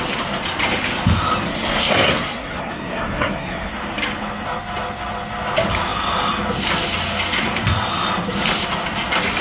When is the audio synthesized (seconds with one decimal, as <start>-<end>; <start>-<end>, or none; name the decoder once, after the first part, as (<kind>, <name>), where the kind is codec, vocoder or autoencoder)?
1.5-3.7 (codec, SNAC)